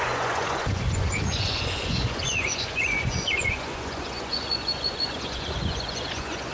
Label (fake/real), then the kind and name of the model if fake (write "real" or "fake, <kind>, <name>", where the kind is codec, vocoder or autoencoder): fake, vocoder, Vocos